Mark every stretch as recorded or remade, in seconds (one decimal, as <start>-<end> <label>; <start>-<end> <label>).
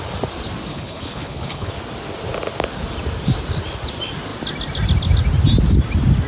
0.0-0.7 recorded; 0.7-1.7 remade; 1.7-6.3 recorded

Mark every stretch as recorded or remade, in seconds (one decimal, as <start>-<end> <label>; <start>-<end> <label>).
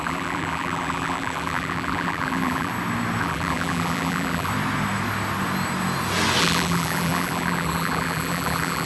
0.0-2.7 remade; 2.7-3.2 recorded; 3.2-4.5 remade; 4.5-6.4 recorded; 6.4-8.9 remade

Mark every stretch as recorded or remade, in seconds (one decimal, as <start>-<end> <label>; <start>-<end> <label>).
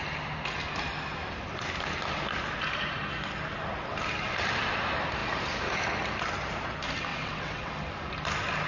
0.0-7.1 recorded; 7.1-7.7 remade; 7.7-8.7 recorded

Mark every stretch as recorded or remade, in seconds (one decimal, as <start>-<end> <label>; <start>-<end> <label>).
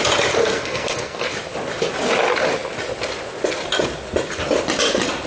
0.0-0.4 recorded; 0.4-1.3 remade; 1.3-5.3 recorded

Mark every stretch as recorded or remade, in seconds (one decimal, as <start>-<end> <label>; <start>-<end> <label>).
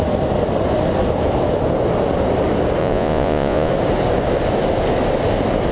0.0-2.8 recorded; 2.8-3.7 remade; 3.7-5.7 recorded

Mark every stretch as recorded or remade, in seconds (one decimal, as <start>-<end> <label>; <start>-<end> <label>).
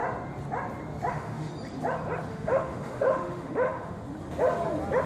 0.0-1.1 recorded; 1.1-1.5 remade; 1.5-2.3 recorded; 2.3-4.0 remade; 4.0-5.1 recorded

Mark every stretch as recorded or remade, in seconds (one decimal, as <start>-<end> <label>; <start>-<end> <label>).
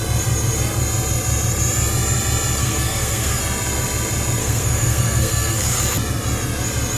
0.0-2.6 recorded; 2.6-3.4 remade; 3.4-4.4 recorded; 4.4-5.8 remade; 5.8-7.0 recorded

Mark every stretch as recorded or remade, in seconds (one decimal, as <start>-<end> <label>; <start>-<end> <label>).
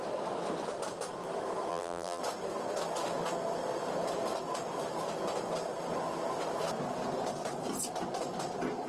0.0-1.7 recorded; 1.7-2.2 remade; 2.2-8.9 recorded